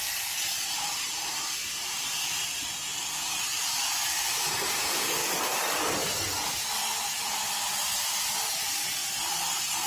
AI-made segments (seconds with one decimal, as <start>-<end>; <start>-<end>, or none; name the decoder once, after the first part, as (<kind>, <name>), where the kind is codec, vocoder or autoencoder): 0.7-2.9 (vocoder, BigVGAN v2); 3.4-9.0